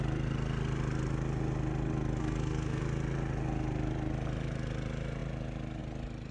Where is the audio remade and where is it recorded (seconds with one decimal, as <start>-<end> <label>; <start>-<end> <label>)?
0.0-2.2 recorded; 2.2-2.8 remade; 2.8-6.3 recorded